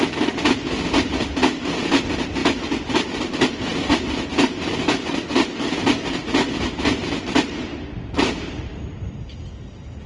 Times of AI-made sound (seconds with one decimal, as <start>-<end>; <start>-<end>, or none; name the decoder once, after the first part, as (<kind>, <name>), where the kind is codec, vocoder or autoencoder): none